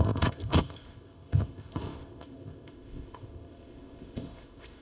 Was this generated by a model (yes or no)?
yes